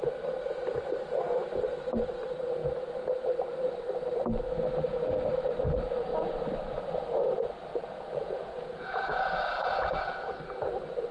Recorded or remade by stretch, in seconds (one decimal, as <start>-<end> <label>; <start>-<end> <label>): 0.0-7.7 recorded; 7.7-10.3 remade; 10.3-11.1 recorded